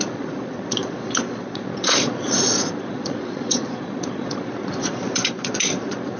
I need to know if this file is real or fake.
fake